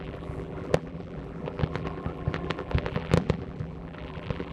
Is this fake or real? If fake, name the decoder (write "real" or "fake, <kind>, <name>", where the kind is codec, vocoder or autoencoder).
fake, vocoder, BigVGAN v2